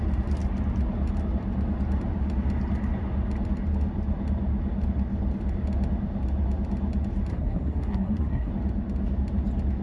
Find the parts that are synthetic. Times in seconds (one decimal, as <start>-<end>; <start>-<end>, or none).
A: 7.3-8.5